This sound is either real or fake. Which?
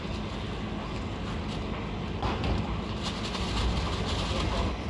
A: real